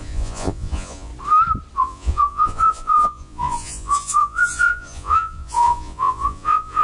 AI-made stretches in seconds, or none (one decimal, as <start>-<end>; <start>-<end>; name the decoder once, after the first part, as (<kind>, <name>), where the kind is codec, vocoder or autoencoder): 0.0-1.1 (vocoder, Vocos); 1.8-6.8